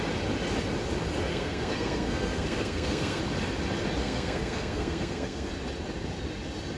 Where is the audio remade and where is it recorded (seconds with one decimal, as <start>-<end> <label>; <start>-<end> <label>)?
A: 0.0-1.3 recorded; 1.3-3.2 remade; 3.2-4.0 recorded; 4.0-5.5 remade; 5.5-6.8 recorded